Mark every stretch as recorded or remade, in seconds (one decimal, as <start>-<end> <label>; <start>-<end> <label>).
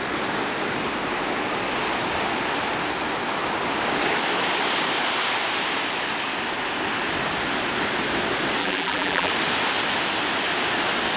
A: 0.0-8.6 recorded; 8.6-9.3 remade; 9.3-11.2 recorded